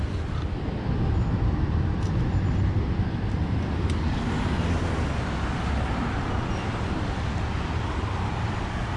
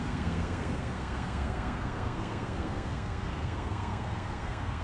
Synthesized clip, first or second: second